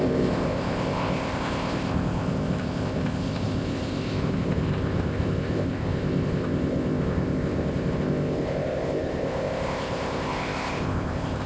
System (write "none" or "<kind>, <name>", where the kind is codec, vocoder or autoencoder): codec, ZipCodec